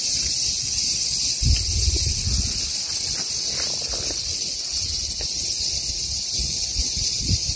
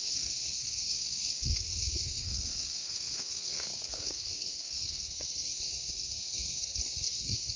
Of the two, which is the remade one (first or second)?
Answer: second